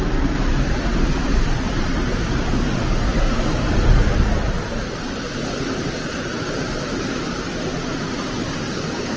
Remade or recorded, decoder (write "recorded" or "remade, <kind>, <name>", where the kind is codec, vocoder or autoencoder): remade, vocoder, BigVGAN v2